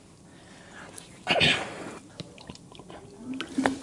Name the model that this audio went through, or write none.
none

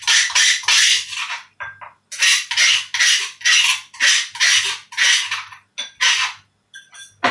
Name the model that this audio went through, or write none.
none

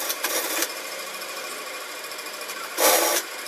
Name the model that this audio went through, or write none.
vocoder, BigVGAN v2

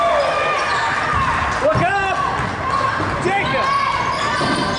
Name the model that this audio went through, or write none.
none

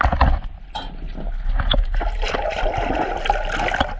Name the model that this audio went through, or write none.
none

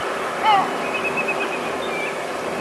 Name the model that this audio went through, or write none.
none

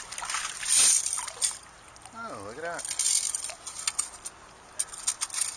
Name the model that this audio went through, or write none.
none